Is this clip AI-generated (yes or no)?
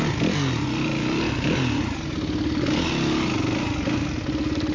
no